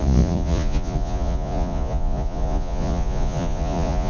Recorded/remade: remade